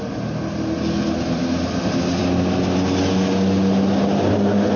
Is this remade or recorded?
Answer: recorded